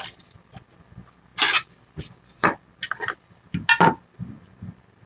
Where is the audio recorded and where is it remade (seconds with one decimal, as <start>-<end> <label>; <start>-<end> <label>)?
0.0-5.1 recorded